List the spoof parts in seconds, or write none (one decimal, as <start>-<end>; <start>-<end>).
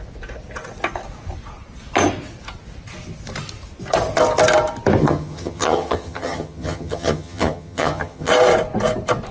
5.0-8.3